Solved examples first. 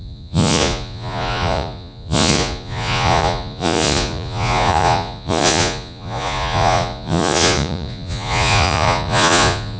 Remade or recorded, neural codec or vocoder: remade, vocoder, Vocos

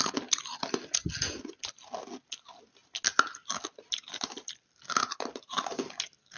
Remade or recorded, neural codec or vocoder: recorded